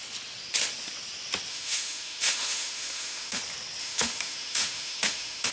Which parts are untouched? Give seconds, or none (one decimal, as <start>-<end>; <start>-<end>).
0.0-1.5; 3.4-3.8